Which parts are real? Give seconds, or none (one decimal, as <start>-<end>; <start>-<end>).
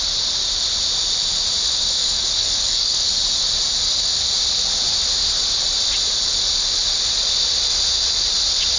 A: 0.0-2.0; 3.1-8.8